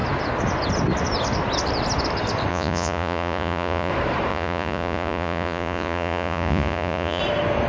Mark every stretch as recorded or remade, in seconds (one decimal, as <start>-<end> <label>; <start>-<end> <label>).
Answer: 0.0-2.5 recorded; 2.5-3.9 remade; 3.9-4.3 recorded; 4.3-7.2 remade; 7.2-7.7 recorded